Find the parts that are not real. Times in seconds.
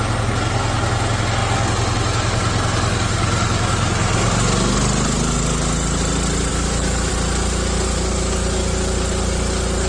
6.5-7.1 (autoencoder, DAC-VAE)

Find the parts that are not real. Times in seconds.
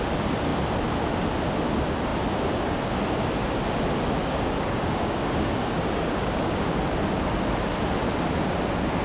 4.2-6.7 (codec, DAC)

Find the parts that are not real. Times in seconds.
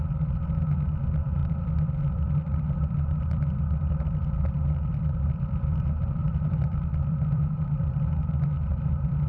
6.2-8.1 (vocoder, BigVGAN v2)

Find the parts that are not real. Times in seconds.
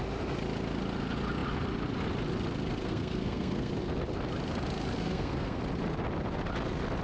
2.8-3.7 (codec, SNAC); 5.0-5.6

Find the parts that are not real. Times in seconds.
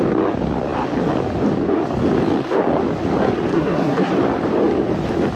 3.5-4.1 (codec, SNAC)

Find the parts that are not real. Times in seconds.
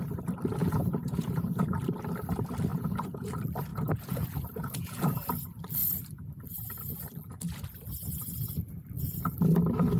0.6-1.6 (vocoder, Vocos); 2.7-3.3; 3.7-5.3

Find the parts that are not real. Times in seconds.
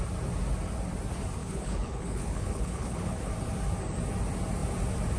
1.4-3.3 (codec, HILCodec)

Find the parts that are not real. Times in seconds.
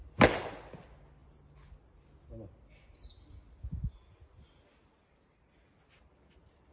none